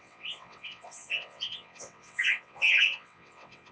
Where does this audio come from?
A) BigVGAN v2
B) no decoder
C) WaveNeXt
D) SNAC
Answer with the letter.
C